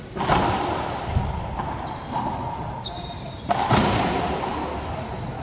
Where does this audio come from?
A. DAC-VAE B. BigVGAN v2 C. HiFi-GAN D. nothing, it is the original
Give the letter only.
D